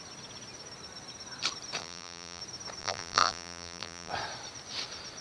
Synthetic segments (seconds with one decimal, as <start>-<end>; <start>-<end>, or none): 1.8-2.4; 2.8-4.1